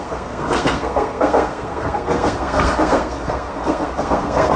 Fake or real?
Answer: fake